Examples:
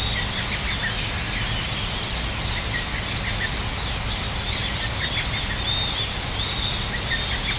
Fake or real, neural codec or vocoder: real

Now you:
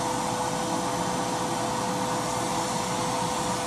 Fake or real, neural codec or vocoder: real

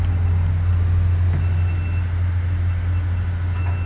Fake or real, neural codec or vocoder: real